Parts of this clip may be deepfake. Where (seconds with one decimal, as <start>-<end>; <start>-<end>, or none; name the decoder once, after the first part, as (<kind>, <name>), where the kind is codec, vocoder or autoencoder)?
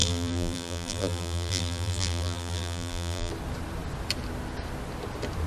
0.0-3.3 (vocoder, BigVGAN v2)